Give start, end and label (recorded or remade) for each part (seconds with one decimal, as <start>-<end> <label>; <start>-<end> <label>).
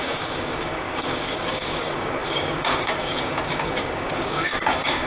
0.0-5.1 remade